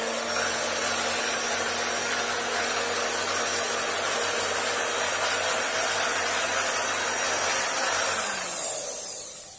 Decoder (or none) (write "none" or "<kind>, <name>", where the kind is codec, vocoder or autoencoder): none